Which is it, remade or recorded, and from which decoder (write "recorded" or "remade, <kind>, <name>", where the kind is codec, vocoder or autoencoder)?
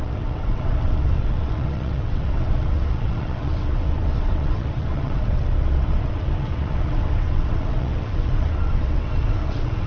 remade, vocoder, WaveNeXt